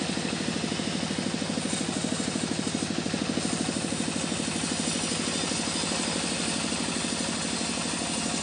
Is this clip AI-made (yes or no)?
no